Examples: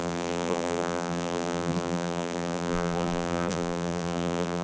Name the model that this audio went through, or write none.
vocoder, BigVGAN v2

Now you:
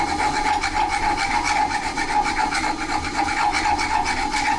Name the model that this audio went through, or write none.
none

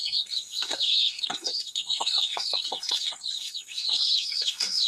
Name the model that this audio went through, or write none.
codec, SNAC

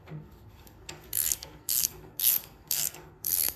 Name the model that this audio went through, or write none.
codec, SNAC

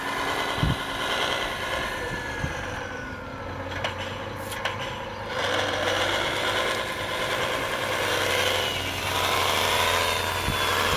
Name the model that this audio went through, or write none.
none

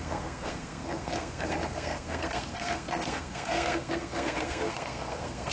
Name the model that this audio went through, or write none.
codec, SNAC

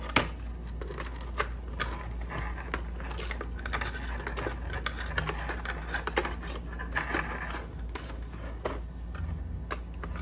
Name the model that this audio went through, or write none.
none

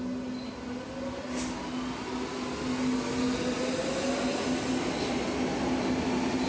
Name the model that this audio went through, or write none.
none